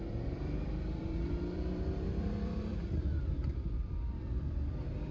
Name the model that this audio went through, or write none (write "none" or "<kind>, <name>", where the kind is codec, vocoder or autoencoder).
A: vocoder, BigVGAN v2